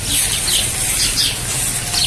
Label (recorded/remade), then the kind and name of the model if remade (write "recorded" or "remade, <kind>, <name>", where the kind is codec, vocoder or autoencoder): recorded